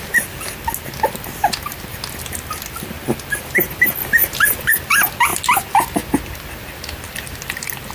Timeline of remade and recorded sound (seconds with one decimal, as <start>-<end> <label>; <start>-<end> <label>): 0.0-7.9 recorded